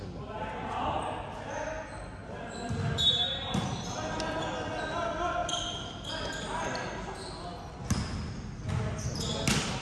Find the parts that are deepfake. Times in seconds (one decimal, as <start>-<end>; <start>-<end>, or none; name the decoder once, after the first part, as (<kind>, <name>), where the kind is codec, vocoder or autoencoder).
none